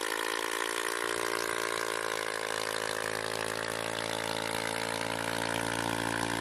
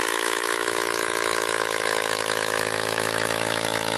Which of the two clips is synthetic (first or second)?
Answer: second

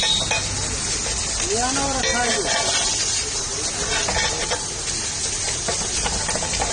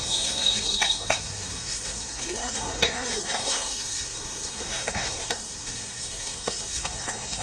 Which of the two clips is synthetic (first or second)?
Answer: second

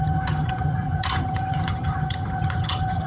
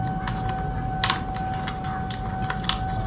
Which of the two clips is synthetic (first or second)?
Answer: first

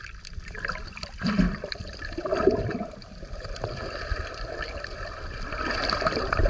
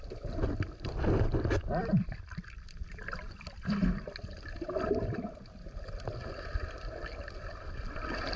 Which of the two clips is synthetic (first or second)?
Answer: first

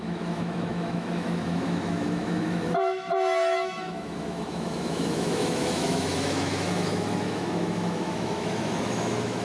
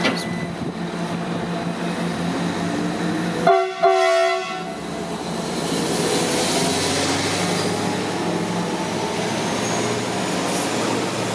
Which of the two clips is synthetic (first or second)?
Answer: first